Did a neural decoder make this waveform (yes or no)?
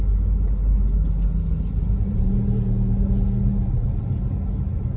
no